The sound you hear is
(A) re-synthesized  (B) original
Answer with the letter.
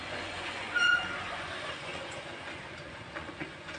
A